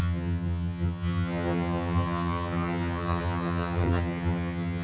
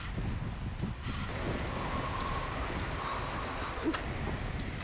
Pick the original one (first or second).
second